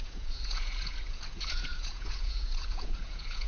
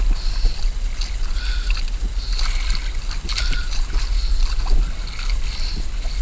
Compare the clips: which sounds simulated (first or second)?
first